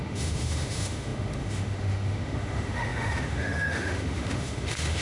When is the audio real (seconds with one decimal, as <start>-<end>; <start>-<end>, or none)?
none